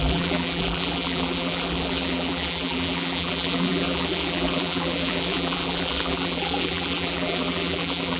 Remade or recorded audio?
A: remade